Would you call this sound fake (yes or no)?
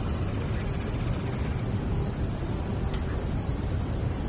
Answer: no